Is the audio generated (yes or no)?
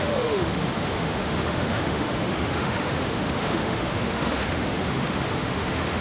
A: yes